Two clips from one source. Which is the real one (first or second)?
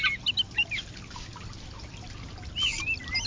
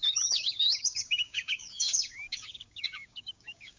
first